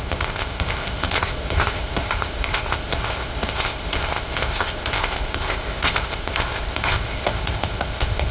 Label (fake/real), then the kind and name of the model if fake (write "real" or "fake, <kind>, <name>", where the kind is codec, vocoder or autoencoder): fake, codec, ZipCodec